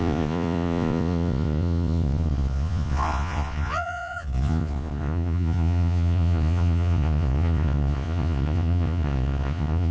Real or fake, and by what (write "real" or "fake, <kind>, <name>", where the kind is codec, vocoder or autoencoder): fake, vocoder, Vocos